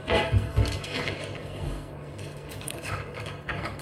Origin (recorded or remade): remade